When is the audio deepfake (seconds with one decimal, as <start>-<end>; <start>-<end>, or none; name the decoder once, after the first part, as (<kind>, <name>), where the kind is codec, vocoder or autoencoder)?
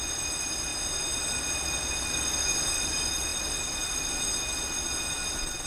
none